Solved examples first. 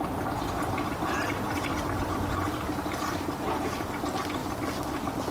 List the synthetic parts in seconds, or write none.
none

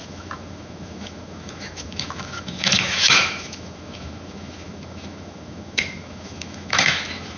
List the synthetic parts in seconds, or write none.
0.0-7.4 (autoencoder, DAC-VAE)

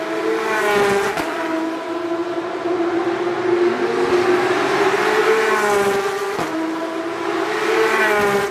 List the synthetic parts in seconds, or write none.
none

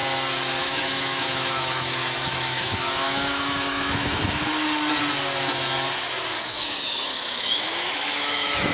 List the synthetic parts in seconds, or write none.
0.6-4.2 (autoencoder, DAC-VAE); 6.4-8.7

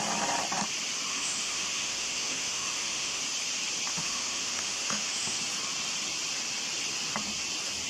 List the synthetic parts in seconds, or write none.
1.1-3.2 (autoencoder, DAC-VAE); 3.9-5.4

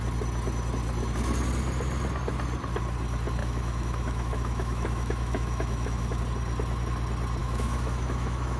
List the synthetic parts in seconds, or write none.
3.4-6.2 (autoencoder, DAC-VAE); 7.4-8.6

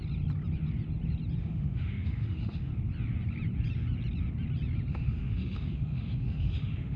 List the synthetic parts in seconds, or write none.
1.4-2.7 (autoencoder, DAC-VAE); 4.9-7.0

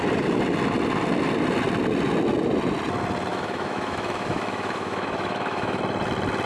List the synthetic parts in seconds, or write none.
3.3-5.8 (autoencoder, DAC-VAE)